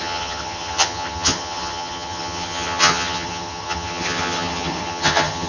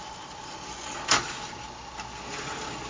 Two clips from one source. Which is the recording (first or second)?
second